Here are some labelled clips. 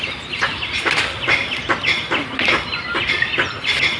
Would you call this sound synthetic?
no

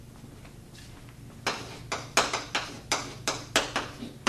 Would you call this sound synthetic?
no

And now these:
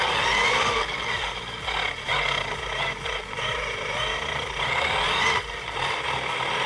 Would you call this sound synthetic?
no